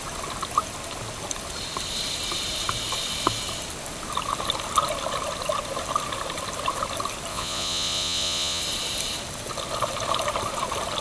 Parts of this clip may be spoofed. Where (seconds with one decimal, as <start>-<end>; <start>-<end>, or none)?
7.3-8.6